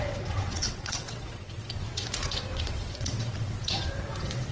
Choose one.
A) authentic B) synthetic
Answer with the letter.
B